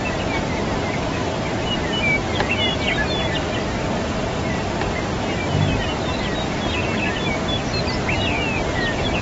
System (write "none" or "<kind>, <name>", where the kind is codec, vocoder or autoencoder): none